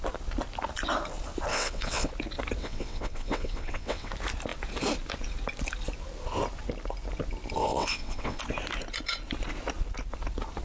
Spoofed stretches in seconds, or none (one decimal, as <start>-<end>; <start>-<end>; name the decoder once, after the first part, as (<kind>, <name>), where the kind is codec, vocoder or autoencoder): 1.5-2.1 (vocoder, WaveNeXt); 2.6-4.1; 7.6-8.4